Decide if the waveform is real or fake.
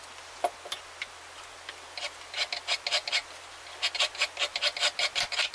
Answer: real